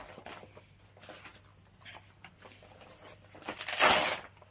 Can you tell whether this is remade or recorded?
recorded